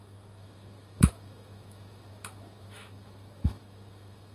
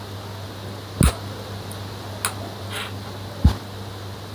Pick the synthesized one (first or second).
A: first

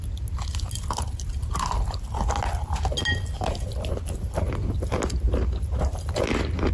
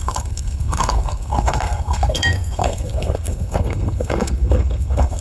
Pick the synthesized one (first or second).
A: second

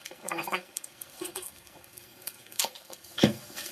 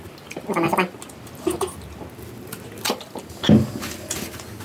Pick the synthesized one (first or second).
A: first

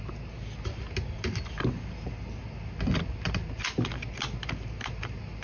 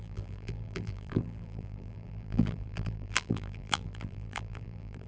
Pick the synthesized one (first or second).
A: second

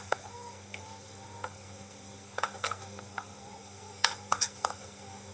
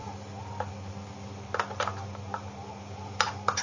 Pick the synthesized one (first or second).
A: first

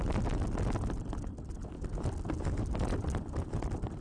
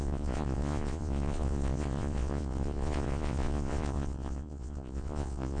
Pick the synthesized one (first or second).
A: second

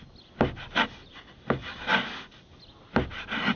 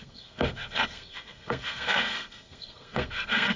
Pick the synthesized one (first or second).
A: second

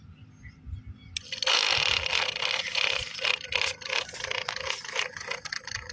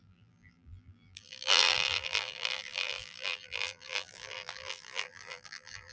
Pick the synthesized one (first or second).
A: second